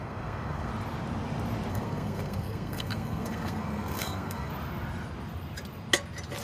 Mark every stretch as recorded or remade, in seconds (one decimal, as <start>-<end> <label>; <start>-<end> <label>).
0.0-0.7 remade; 0.7-1.7 recorded; 1.7-4.5 remade; 4.5-6.4 recorded

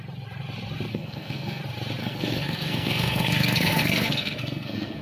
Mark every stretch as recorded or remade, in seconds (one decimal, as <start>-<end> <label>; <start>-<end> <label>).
0.0-0.9 recorded; 0.9-1.6 remade; 1.6-2.0 recorded; 2.0-5.0 remade

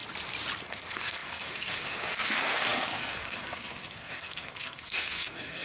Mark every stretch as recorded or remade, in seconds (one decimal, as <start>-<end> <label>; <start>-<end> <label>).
0.0-0.6 recorded; 0.6-5.6 remade